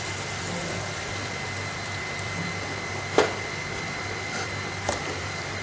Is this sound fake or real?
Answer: fake